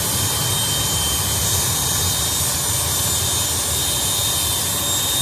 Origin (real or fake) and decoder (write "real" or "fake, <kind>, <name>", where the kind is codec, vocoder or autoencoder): real